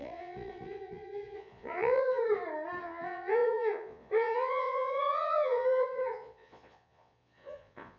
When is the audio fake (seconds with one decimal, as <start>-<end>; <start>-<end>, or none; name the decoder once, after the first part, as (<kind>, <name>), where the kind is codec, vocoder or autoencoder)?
0.0-2.2 (vocoder, Vocos); 2.8-8.0